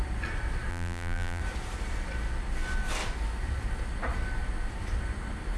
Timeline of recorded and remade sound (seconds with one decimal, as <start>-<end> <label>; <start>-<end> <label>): 0.0-0.7 recorded; 0.7-1.4 remade; 1.4-5.6 recorded